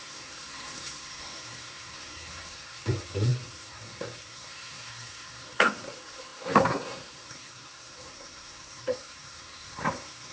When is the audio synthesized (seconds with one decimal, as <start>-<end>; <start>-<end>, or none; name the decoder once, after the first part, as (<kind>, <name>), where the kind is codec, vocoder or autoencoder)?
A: 0.0-10.3 (codec, SNAC)